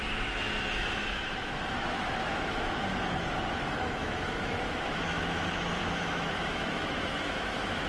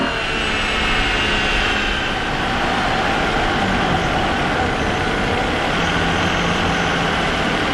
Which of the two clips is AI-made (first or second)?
first